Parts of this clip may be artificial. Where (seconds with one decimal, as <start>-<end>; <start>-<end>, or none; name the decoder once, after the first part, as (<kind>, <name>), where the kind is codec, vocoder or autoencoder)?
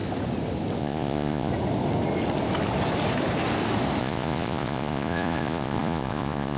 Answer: 0.8-1.5 (vocoder, Vocos); 4.0-6.6